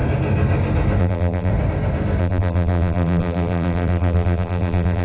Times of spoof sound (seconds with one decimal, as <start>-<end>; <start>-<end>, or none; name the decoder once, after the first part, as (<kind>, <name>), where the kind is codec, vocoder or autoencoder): 1.0-1.5 (vocoder, BigVGAN v2); 2.2-5.0